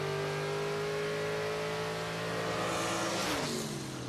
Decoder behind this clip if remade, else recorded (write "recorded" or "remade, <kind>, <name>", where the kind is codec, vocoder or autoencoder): recorded